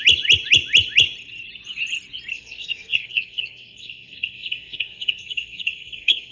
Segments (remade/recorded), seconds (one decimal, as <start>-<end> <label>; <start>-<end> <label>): 0.0-2.3 recorded; 2.3-6.3 remade